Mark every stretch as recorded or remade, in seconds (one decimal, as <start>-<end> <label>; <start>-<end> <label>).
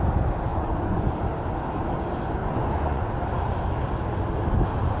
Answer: 0.0-0.5 recorded; 0.5-1.1 remade; 1.1-2.4 recorded; 2.4-3.1 remade; 3.1-5.0 recorded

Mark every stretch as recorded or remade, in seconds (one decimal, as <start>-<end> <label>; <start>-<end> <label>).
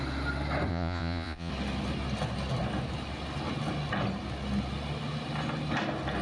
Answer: 0.0-0.7 recorded; 0.7-1.5 remade; 1.5-6.2 recorded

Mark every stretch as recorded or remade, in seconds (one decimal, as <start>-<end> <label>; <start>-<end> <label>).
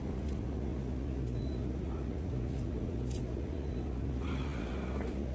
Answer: 0.0-5.3 remade